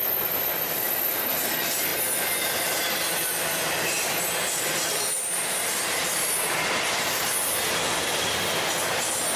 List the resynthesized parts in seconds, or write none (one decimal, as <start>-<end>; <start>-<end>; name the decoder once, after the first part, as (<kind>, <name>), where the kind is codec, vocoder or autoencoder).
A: none